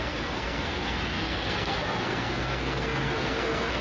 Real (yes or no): no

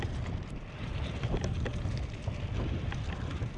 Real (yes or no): yes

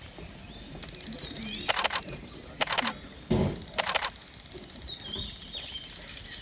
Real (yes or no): yes